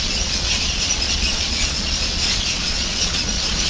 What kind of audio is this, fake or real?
fake